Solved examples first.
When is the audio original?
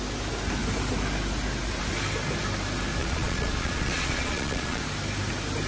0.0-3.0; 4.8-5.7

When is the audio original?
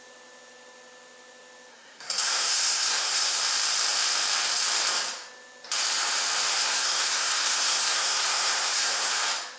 0.0-1.7; 3.4-6.5; 9.1-9.6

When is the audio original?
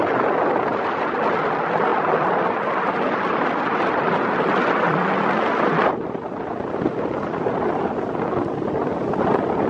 0.0-9.7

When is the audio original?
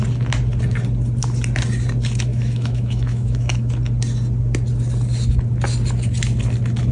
0.0-2.3; 3.7-6.9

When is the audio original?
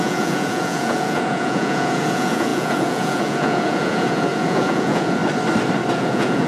5.2-5.9